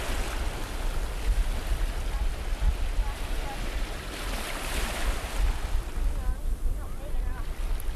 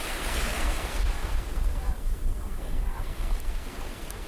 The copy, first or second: second